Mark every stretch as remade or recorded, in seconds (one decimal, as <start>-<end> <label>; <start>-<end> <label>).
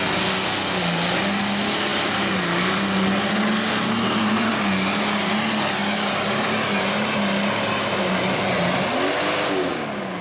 0.0-10.2 recorded